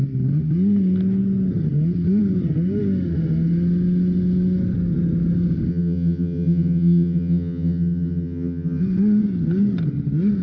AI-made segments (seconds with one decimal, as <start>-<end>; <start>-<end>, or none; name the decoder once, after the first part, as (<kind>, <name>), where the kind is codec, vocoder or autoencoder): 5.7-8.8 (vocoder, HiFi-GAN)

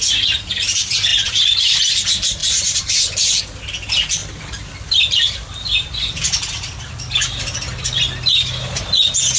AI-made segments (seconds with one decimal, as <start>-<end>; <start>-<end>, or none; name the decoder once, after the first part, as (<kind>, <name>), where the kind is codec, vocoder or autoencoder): 1.1-1.8 (vocoder, BigVGAN v2); 2.4-3.4; 4.2-6.9

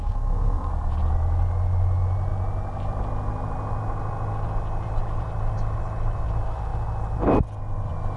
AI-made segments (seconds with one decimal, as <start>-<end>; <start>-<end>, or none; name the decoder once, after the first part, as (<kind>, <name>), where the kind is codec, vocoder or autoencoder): 0.0-0.7 (codec, SNAC)

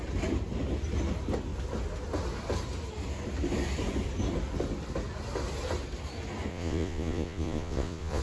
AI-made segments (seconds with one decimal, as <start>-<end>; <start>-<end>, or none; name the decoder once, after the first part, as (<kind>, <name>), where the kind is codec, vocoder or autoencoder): 6.5-8.2 (vocoder, Vocos)

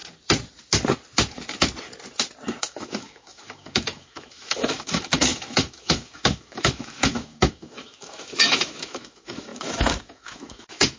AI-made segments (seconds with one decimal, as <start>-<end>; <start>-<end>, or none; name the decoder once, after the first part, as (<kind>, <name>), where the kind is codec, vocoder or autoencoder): 2.6-11.0 (autoencoder, DAC-VAE)